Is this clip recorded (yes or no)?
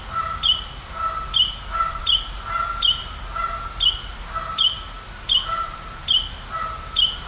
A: yes